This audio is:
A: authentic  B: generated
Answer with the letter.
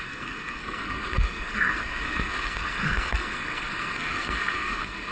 B